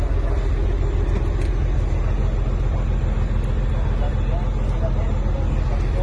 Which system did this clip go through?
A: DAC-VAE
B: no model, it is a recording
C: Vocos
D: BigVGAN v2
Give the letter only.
B